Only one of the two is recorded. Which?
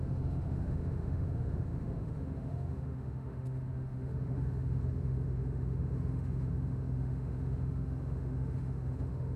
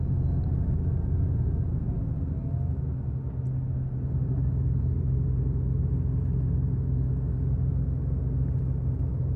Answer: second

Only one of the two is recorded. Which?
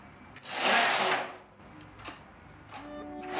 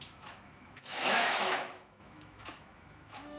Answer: first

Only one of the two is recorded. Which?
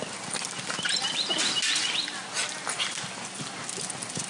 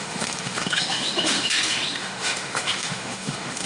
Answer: first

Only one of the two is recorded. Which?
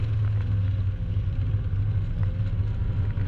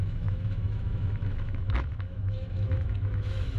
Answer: first